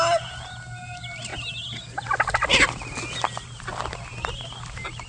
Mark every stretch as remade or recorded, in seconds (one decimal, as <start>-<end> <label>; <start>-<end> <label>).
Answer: 0.0-5.1 recorded